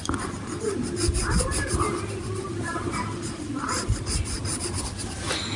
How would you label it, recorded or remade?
remade